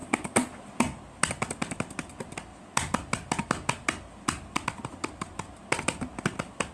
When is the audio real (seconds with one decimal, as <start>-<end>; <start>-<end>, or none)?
0.0-6.7